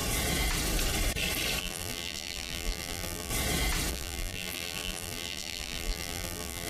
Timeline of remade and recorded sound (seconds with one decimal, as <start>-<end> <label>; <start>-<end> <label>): 0.0-1.6 recorded; 1.6-3.3 remade; 3.3-3.9 recorded; 3.9-6.7 remade